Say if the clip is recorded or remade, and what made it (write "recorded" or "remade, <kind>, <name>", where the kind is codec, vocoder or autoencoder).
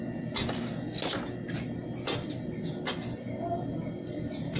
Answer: recorded